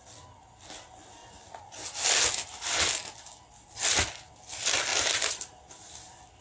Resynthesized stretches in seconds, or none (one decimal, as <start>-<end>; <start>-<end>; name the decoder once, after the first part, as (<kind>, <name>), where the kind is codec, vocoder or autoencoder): none